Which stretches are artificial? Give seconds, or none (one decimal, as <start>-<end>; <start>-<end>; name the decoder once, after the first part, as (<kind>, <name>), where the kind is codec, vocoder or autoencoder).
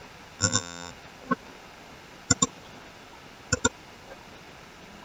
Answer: 0.4-0.9 (vocoder, BigVGAN v2)